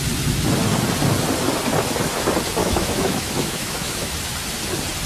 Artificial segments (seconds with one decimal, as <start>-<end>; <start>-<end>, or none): 2.6-4.1